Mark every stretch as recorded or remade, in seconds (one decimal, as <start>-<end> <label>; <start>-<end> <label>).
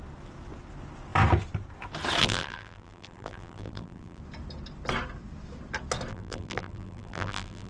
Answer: 0.0-2.2 recorded; 2.2-4.2 remade; 4.2-6.1 recorded; 6.1-7.7 remade